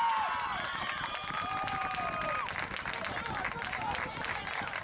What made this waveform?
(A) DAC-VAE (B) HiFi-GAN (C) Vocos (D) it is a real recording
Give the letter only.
D